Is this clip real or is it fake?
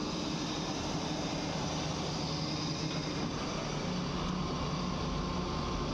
real